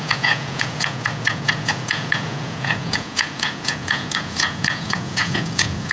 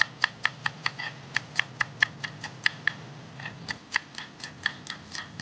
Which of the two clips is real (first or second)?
second